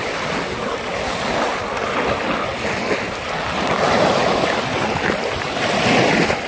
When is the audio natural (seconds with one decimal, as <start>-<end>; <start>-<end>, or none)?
0.0-6.5